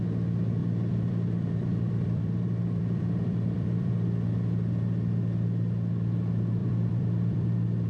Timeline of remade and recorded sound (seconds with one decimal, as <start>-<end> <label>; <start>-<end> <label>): 0.0-0.6 recorded; 0.6-3.9 remade; 3.9-6.6 recorded; 6.6-7.9 remade